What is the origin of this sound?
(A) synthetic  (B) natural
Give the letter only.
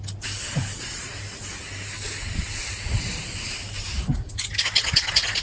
B